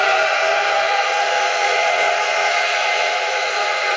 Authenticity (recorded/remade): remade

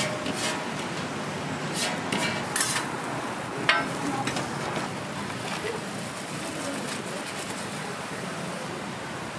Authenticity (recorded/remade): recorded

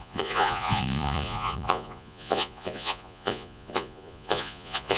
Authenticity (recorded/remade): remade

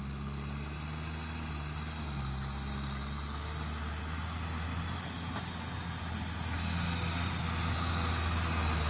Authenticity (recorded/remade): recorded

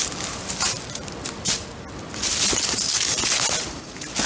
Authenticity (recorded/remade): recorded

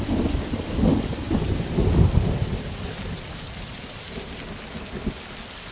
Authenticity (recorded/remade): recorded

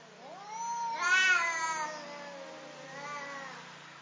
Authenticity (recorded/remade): recorded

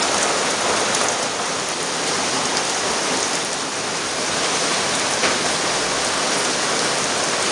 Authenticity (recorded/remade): recorded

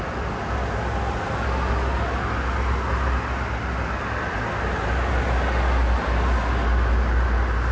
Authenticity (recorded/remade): recorded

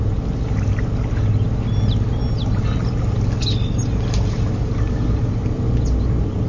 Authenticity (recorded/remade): recorded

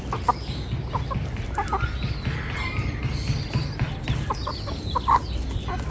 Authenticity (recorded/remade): recorded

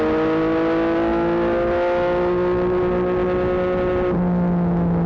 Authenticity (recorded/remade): recorded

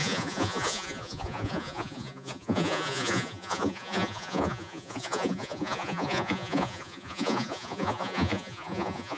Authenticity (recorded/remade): remade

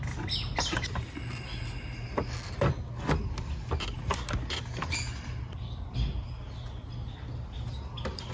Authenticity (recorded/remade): recorded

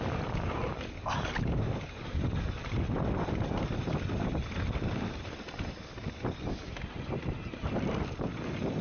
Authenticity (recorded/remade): recorded